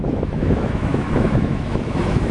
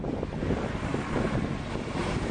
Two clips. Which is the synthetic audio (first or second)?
first